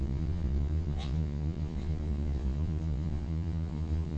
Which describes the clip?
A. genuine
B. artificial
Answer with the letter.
B